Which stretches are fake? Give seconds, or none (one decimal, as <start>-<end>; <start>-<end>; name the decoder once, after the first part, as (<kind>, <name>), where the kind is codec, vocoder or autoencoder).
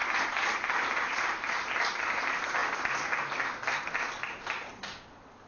none